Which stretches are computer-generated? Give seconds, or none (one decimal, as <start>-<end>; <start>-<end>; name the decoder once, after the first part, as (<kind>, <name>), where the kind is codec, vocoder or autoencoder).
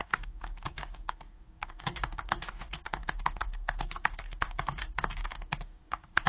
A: 0.0-6.3 (codec, DAC)